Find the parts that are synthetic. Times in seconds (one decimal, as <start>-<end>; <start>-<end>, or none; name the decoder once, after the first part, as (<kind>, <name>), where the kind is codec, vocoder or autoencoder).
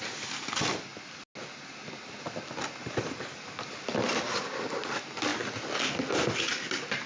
none